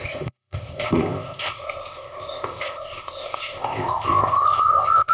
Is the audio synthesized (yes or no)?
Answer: yes